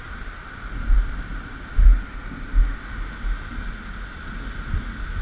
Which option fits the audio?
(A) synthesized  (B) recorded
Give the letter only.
B